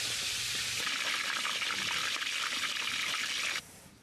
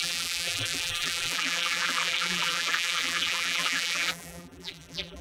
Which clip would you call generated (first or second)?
second